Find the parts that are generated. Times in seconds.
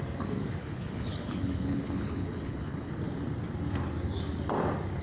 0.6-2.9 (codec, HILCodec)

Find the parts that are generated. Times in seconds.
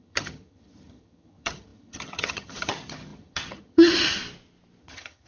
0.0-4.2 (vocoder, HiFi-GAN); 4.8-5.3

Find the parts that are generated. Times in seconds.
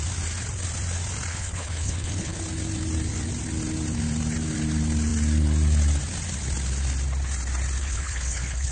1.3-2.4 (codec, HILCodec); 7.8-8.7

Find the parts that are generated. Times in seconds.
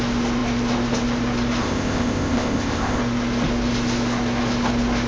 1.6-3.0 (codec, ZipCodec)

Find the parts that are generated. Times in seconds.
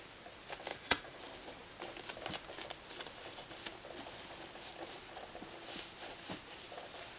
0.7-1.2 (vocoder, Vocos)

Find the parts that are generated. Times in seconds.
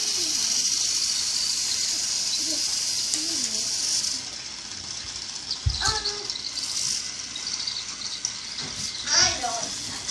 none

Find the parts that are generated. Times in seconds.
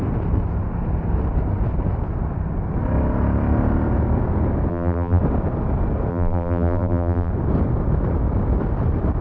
4.7-5.2 (vocoder, BigVGAN v2); 6.1-7.3